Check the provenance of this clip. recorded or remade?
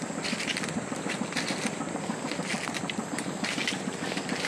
recorded